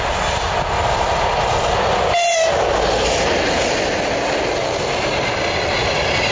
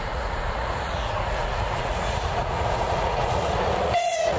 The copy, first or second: second